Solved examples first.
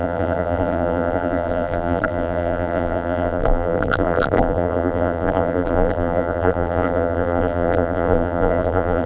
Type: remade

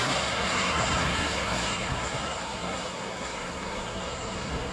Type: remade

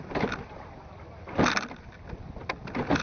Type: recorded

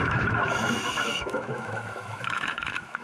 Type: remade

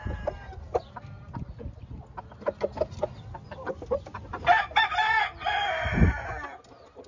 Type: recorded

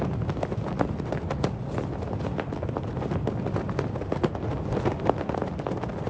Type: recorded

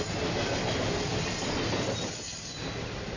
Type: recorded